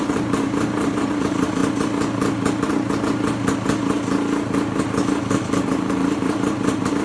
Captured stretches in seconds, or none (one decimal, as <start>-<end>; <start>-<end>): 1.6-5.3